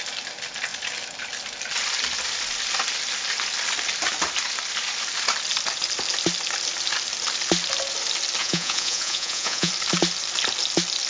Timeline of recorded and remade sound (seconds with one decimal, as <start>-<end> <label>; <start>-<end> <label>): 0.0-8.4 recorded; 8.4-9.7 remade; 9.7-11.1 recorded